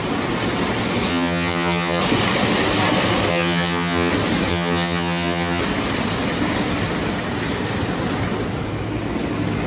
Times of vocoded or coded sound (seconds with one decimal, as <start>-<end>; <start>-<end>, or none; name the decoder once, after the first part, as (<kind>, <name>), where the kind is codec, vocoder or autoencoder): 1.1-2.0 (vocoder, HiFi-GAN); 3.3-4.1; 4.5-5.6